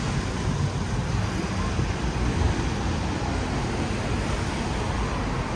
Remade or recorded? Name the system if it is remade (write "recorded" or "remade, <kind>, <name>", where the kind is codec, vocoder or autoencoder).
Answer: recorded